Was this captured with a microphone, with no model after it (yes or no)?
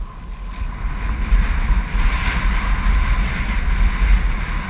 yes